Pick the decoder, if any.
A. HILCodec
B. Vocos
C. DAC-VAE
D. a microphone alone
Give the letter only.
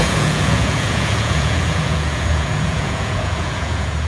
B